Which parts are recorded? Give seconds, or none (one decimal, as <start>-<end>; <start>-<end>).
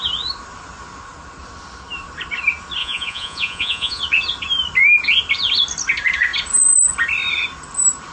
0.0-2.8; 4.0-8.1